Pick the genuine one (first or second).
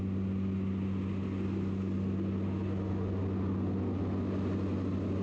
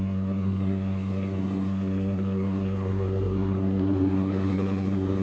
first